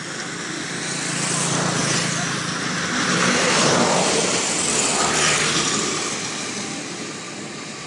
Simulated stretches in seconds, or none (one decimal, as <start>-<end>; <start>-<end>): none